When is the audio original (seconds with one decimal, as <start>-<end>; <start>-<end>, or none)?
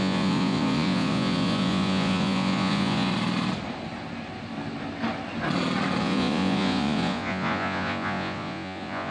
3.1-6.0